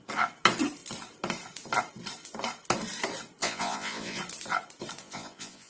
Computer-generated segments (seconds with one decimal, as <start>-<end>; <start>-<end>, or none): 3.4-4.2; 5.0-5.7